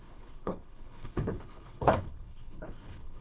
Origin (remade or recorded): remade